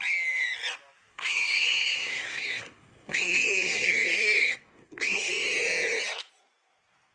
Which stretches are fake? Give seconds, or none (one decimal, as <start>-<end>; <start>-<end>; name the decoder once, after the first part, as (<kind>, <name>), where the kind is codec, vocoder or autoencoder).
1.1-5.3 (codec, SNAC)